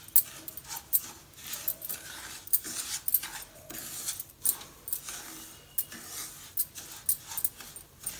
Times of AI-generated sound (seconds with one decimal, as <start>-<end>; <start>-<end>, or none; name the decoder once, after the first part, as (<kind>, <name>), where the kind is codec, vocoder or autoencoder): none